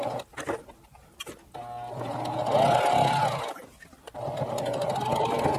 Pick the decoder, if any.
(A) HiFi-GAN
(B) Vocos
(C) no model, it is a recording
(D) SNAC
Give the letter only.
C